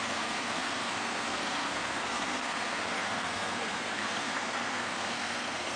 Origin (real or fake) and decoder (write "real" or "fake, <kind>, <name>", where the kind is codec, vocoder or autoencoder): fake, codec, SNAC